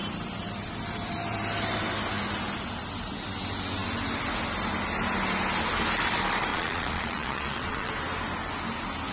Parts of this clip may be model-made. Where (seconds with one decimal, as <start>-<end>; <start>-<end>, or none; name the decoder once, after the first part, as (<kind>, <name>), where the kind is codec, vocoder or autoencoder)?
6.5-7.9 (vocoder, Vocos)